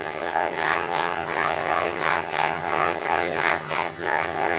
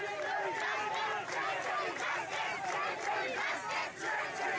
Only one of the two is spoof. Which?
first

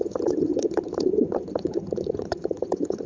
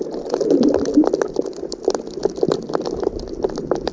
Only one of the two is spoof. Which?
first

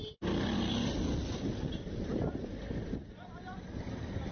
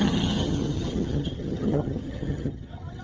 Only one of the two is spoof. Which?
second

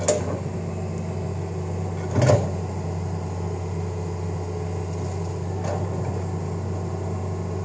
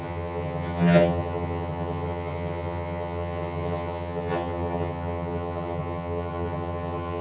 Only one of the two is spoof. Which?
second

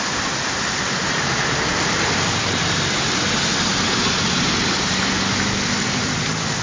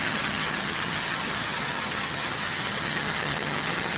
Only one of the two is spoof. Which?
second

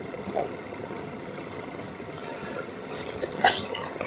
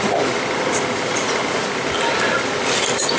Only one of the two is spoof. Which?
first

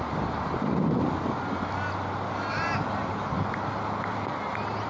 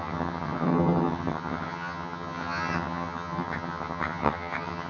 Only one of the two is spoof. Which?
second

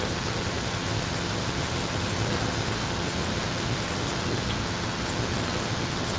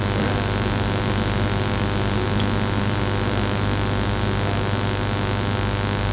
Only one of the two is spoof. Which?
first